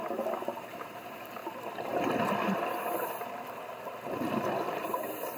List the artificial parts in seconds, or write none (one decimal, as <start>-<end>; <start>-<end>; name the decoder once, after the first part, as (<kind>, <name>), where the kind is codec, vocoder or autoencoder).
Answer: 0.0-1.4 (vocoder, BigVGAN v2); 4.6-5.4